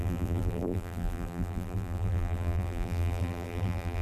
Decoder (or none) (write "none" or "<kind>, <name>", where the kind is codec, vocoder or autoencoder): vocoder, BigVGAN v2